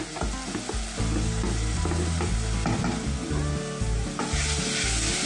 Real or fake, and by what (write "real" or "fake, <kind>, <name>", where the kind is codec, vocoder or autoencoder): real